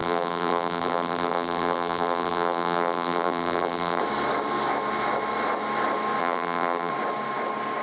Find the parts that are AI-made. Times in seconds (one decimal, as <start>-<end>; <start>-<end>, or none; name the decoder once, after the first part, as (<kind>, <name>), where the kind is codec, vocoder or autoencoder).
0.0-4.0 (vocoder, BigVGAN v2); 6.2-6.9